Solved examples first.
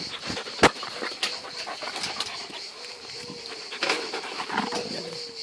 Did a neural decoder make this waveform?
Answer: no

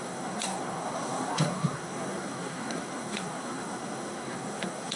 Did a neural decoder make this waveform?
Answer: yes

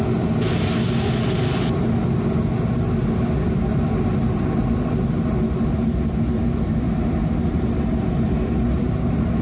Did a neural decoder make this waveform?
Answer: no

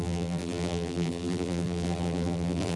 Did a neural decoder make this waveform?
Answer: yes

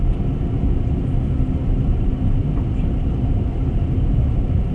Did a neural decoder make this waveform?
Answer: yes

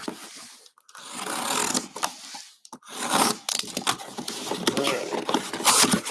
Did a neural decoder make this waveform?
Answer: no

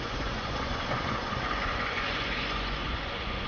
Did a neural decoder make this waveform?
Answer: yes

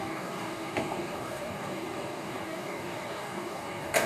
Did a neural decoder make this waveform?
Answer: yes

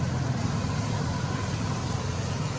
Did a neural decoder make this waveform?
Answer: no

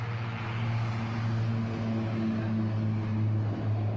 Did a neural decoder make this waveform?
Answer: no